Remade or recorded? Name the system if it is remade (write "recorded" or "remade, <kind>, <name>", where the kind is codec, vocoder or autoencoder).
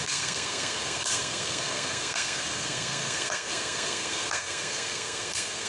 remade, codec, SNAC